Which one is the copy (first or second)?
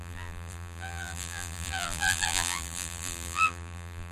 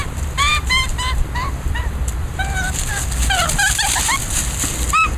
first